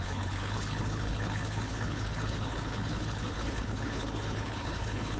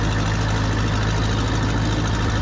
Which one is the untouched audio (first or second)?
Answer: second